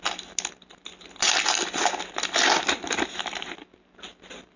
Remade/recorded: recorded